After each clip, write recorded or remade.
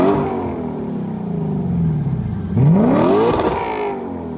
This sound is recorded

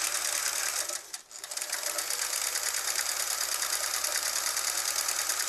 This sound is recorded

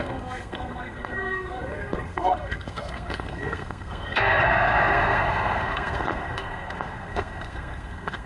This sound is remade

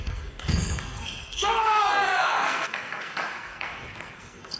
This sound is remade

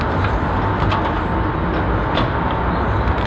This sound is recorded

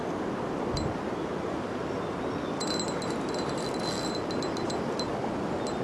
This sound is recorded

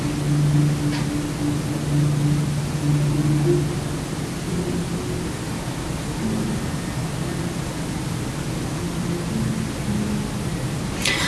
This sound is recorded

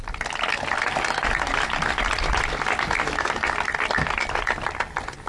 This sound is recorded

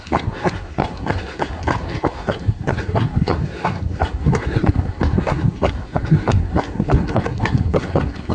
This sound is remade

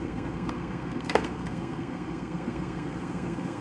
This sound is remade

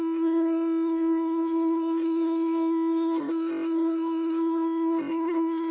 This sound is remade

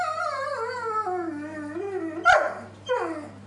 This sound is recorded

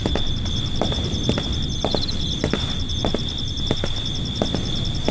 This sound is recorded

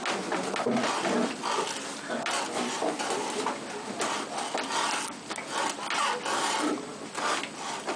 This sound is recorded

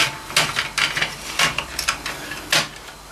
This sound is recorded